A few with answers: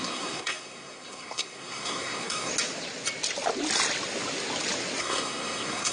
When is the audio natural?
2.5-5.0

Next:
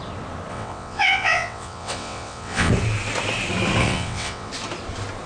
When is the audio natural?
0.0-0.5; 2.7-3.8; 4.5-5.3